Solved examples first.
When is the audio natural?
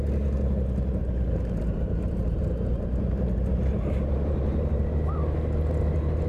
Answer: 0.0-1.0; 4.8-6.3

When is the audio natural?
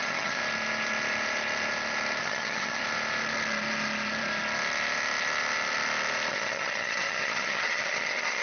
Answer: 0.4-2.2; 2.8-6.3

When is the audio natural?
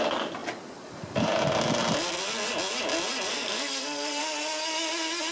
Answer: 0.0-3.3; 4.2-5.3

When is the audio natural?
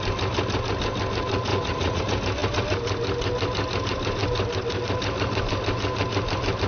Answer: 0.0-1.5; 2.0-6.7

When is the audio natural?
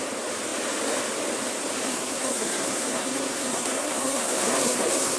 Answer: 0.0-1.9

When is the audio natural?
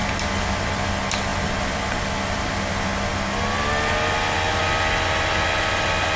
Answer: 0.9-1.3; 2.5-6.2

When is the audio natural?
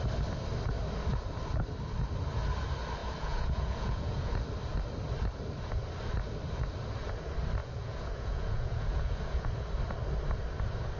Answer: 0.0-3.0; 4.4-7.6; 9.5-11.0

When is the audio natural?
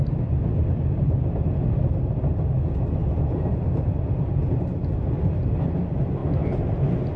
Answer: 0.0-7.2